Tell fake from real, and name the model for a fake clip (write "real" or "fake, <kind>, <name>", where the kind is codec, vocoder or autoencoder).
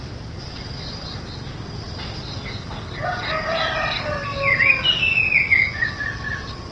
real